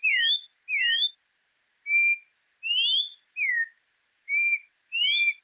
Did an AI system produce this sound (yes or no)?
no